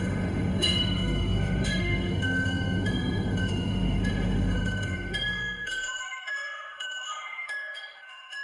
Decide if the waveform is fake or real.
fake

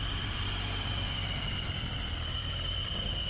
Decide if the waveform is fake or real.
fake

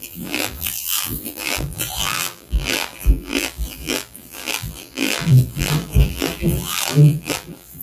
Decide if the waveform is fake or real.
fake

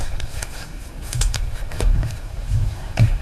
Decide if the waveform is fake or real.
fake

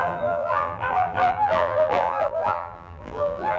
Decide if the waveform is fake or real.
fake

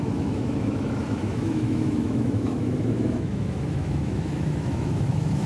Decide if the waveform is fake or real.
fake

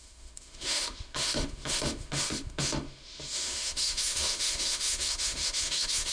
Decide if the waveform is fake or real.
fake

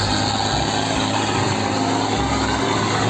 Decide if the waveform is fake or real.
real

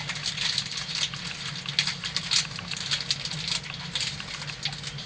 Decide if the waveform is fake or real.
real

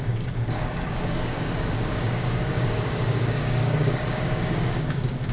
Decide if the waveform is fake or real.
fake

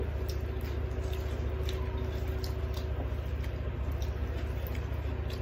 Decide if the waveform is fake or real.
real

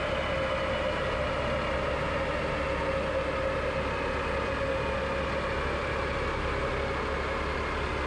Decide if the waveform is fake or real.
real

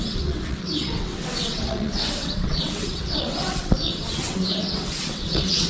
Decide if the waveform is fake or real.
fake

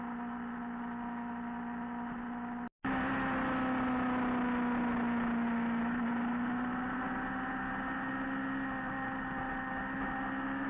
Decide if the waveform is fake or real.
real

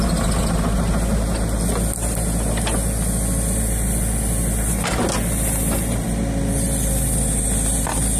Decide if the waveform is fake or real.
real